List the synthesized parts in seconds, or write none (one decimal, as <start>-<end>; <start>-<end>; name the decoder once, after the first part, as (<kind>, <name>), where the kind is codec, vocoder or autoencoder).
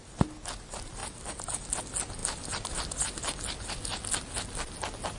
none